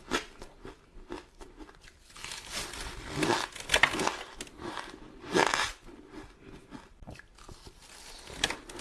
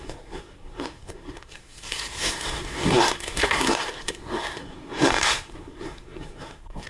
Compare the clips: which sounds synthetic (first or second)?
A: second